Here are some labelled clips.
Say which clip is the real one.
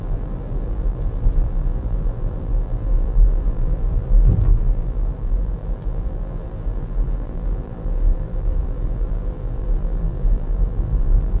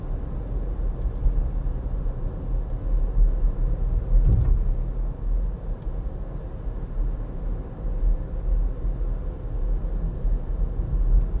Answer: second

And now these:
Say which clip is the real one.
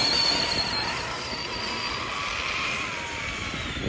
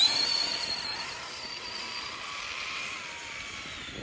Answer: first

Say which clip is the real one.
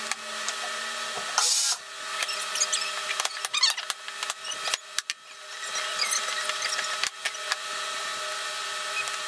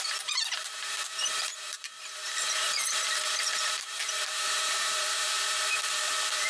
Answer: first